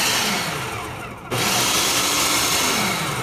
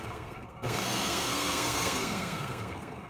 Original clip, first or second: first